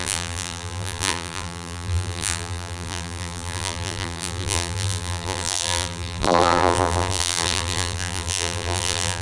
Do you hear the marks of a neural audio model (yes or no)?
yes